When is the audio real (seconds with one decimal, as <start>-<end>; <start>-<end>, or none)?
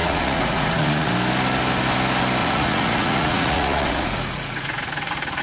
1.1-2.4